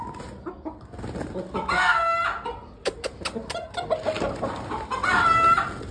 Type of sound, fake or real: real